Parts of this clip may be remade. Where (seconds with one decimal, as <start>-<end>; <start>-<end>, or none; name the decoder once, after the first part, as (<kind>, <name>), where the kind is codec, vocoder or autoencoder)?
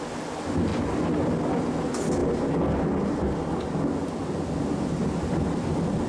none